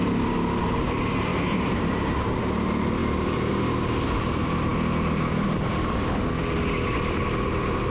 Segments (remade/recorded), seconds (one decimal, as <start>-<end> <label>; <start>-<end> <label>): 0.0-1.3 recorded; 1.3-2.4 remade; 2.4-3.0 recorded; 3.0-3.5 remade; 3.5-7.9 recorded